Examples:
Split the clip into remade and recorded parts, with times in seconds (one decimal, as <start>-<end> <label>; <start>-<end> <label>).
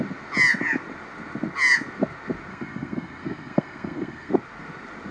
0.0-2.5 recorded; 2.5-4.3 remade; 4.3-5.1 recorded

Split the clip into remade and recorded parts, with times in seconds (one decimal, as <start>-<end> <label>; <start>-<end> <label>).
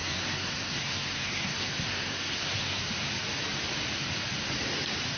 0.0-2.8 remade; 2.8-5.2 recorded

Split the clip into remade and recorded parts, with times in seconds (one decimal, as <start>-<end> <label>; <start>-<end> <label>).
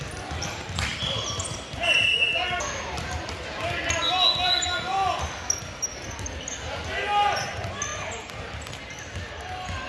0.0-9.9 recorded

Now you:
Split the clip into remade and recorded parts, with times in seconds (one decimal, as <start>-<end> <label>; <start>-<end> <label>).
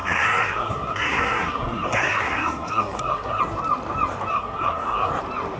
0.0-3.4 remade; 3.4-4.3 recorded; 4.3-5.1 remade; 5.1-5.6 recorded